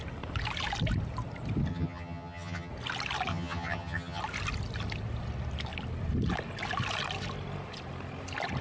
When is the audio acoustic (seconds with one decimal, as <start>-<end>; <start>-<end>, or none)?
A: 0.0-1.7; 2.7-3.3; 4.2-8.6

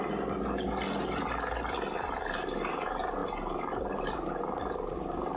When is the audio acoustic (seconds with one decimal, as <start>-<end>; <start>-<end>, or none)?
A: 0.0-5.4

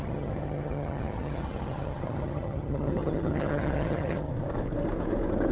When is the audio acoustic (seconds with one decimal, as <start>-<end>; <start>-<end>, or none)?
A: 4.3-5.5

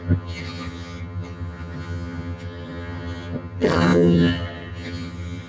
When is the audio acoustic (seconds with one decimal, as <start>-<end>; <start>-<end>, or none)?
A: none

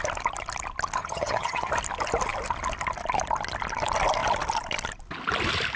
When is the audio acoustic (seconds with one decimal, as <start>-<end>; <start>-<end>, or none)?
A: 0.0-1.0; 1.7-5.8

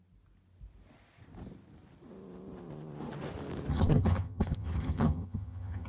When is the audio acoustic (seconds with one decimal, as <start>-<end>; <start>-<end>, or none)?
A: 0.0-3.7

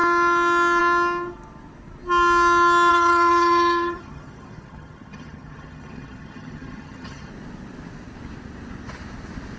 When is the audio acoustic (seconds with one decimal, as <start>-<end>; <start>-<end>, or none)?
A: 0.0-2.9; 7.3-9.6